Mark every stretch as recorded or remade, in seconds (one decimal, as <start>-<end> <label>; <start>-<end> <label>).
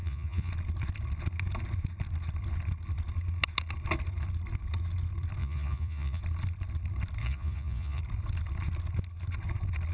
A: 0.0-0.5 remade; 0.5-5.4 recorded; 5.4-6.2 remade; 6.2-7.2 recorded; 7.2-8.0 remade; 8.0-9.9 recorded